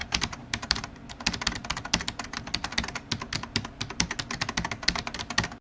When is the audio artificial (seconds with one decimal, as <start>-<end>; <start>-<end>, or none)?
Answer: 0.0-0.9